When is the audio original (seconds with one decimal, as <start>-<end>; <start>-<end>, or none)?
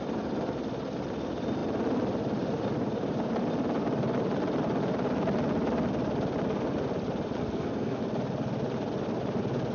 0.0-7.4; 8.0-9.7